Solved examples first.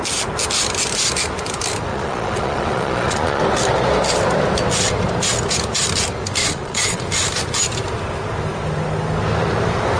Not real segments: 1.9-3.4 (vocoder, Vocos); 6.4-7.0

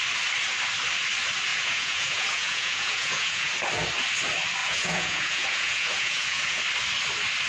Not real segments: 1.5-3.5 (vocoder, Vocos); 4.6-6.6

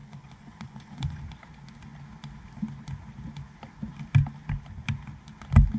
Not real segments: 0.0-1.2 (vocoder, Vocos)

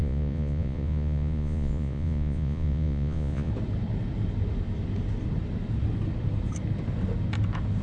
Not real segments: 0.0-3.5 (vocoder, Vocos)

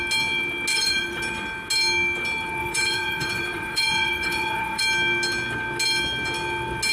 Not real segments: 0.7-1.2 (vocoder, Vocos); 2.6-4.8

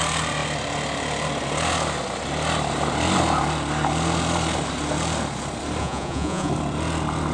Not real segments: 5.8-6.5 (vocoder, Vocos)

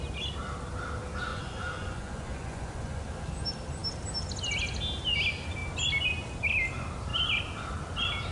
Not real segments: 1.3-3.0 (vocoder, Vocos)

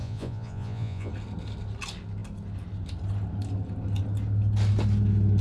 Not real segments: 0.0-1.1 (vocoder, Vocos)